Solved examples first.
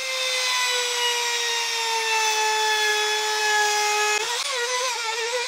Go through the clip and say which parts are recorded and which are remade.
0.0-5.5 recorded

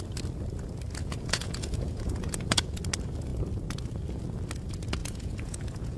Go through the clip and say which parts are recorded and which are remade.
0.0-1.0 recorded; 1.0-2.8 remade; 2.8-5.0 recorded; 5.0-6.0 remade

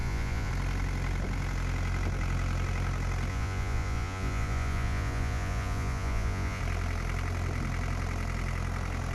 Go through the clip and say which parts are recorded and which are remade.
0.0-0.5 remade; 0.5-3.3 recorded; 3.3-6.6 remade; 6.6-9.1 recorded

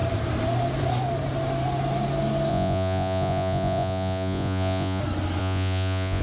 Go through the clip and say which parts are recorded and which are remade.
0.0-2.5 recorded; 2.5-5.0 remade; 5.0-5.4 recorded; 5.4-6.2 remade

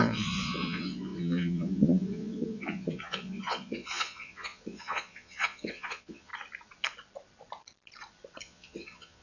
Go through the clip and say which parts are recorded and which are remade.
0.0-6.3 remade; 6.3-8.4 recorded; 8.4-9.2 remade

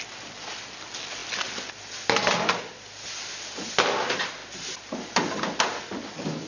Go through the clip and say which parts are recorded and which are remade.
0.0-6.5 recorded